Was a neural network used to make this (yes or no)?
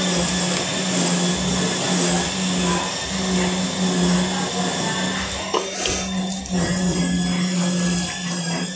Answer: no